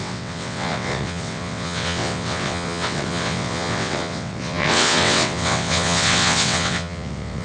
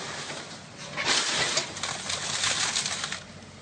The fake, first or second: first